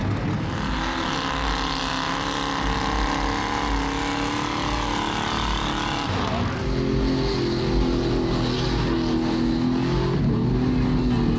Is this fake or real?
real